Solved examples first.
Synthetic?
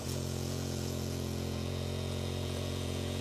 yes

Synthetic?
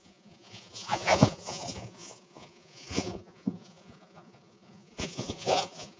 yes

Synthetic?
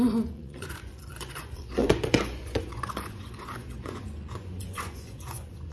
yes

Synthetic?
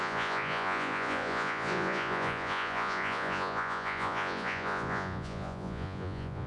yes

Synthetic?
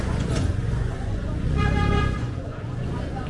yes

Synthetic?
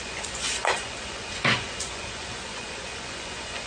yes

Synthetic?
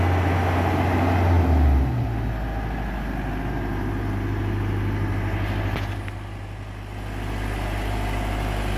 no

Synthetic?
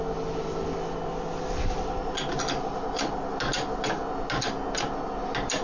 no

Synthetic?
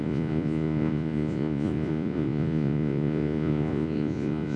yes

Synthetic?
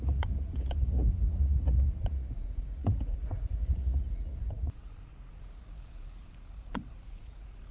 yes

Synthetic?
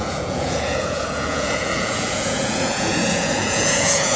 yes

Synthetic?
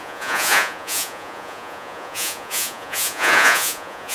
yes